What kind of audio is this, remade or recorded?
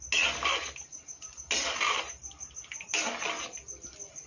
recorded